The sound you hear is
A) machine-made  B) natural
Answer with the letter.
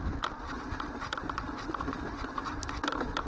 B